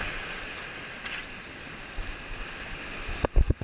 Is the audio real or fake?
real